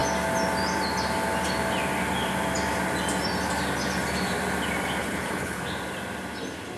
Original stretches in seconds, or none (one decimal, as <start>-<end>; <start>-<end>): 0.0-5.0; 5.6-6.8